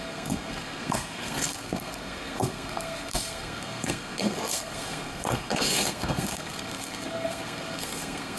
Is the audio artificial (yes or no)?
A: yes